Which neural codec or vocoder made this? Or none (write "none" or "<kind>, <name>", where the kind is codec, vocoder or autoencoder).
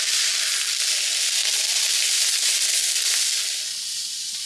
none